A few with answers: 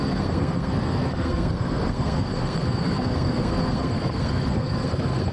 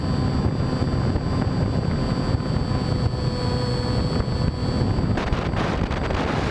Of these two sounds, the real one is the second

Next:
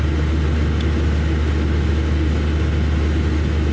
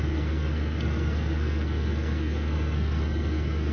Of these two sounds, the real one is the first